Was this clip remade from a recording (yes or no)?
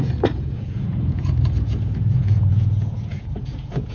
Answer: yes